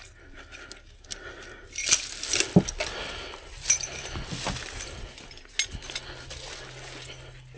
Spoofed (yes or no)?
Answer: no